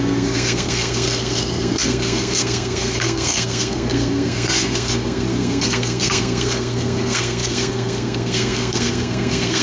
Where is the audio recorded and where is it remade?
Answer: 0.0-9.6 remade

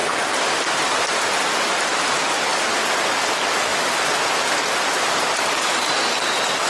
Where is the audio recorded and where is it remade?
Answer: 0.0-6.7 recorded

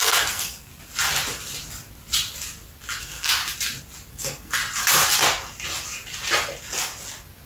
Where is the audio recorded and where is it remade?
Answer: 0.0-0.7 remade; 0.7-3.0 recorded; 3.0-3.4 remade; 3.4-4.1 recorded; 4.1-4.6 remade; 4.6-7.5 recorded

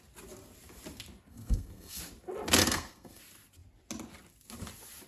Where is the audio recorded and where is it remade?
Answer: 0.0-1.3 recorded; 1.3-2.0 remade; 2.0-2.6 recorded; 2.6-3.2 remade; 3.2-5.1 recorded

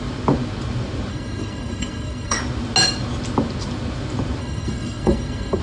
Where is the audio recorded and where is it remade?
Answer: 0.0-1.1 recorded; 1.1-2.4 remade; 2.4-4.4 recorded; 4.4-5.6 remade

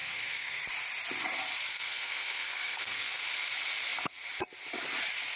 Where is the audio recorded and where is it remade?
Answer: 0.0-0.6 remade; 0.6-1.7 recorded; 1.7-3.2 remade; 3.2-5.4 recorded

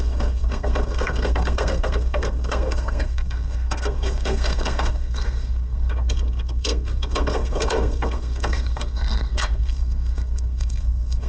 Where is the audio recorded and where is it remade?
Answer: 0.0-11.3 remade